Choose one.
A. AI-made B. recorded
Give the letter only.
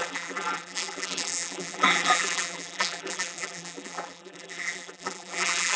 A